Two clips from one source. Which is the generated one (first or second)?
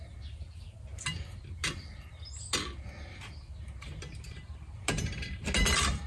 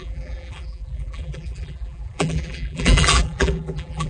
second